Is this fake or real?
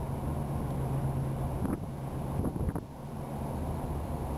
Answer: real